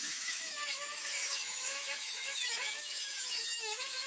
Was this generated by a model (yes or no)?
yes